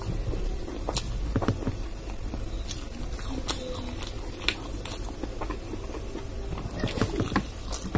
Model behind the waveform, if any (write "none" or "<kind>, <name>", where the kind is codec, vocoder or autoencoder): none